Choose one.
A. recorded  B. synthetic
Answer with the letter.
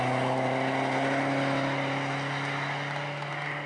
A